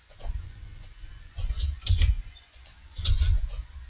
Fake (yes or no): yes